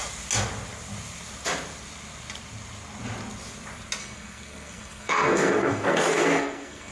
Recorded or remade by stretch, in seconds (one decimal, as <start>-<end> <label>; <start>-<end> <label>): 0.0-4.0 recorded; 4.0-6.9 remade